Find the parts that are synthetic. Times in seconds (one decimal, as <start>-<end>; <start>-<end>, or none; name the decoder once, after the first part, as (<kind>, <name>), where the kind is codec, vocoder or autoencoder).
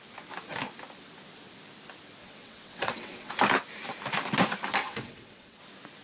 2.2-3.3 (vocoder, WaveNeXt); 4.8-5.6